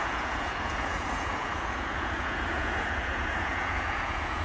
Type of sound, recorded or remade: remade